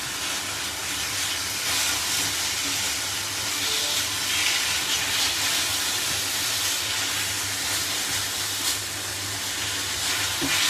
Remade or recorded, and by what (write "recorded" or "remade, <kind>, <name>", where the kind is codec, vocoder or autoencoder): recorded